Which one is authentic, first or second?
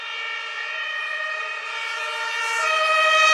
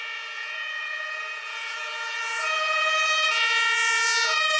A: first